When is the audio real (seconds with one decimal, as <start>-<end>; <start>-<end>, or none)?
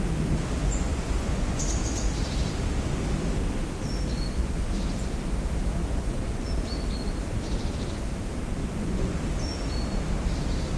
0.0-0.6; 1.6-4.1; 4.7-5.8; 6.5-8.6; 9.2-10.8